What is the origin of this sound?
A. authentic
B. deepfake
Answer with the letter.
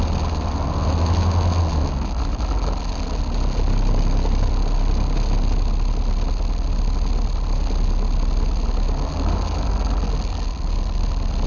A